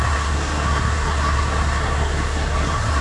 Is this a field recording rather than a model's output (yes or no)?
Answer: no